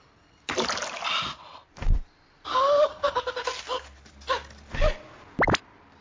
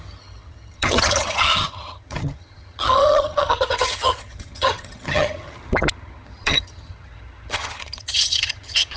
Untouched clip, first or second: first